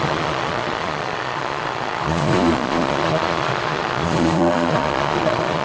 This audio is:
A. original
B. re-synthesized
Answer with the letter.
B